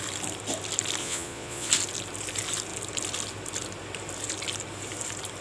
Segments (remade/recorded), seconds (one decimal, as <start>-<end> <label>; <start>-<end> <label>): 0.0-1.0 recorded; 1.0-1.7 remade; 1.7-5.4 recorded